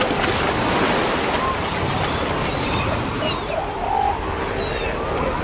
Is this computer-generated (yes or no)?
no